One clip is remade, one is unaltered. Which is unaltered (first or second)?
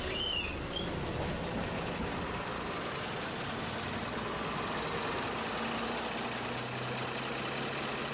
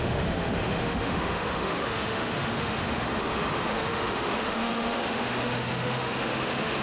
first